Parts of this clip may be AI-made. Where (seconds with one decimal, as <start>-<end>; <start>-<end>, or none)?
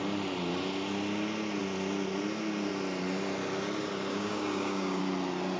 4.1-5.0